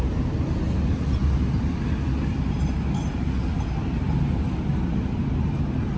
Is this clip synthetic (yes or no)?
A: no